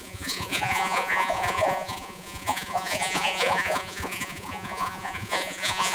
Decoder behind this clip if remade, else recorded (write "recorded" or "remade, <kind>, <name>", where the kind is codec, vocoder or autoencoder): remade, vocoder, Vocos